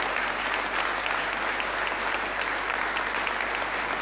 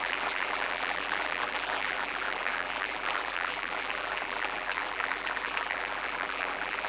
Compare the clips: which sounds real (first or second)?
first